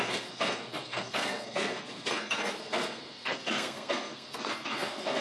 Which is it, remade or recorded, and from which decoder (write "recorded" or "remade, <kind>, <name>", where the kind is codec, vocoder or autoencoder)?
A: remade, codec, SNAC